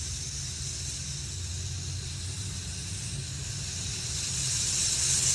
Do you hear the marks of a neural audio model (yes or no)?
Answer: no